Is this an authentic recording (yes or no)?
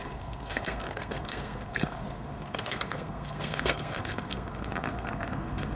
no